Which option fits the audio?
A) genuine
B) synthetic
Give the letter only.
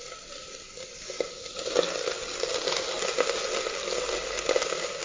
A